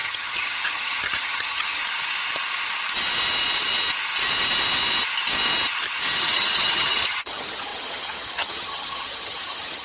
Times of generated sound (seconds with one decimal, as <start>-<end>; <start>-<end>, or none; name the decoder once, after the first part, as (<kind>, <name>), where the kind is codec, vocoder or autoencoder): 0.0-1.8 (vocoder, HiFi-GAN); 6.2-9.8